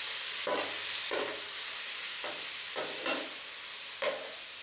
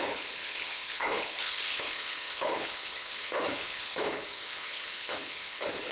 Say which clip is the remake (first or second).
second